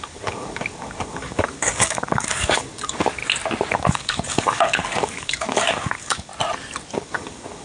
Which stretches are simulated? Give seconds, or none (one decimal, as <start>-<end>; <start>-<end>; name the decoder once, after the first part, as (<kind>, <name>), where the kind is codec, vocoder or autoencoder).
0.0-3.2 (codec, DAC); 3.7-6.3; 6.9-7.6